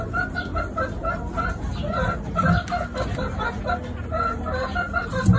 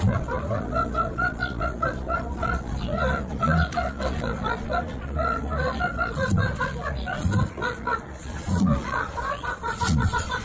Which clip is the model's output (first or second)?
second